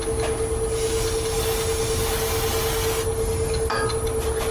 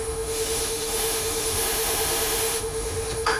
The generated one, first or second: second